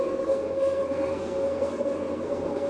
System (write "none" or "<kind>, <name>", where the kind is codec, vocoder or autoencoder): codec, SNAC